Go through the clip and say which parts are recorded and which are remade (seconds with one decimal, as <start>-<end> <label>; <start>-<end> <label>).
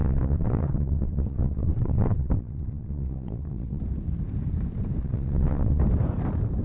0.0-3.8 remade; 3.8-5.0 recorded; 5.0-5.8 remade; 5.8-6.6 recorded